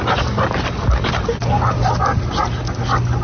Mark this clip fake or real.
real